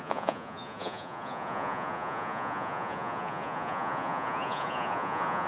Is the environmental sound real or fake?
fake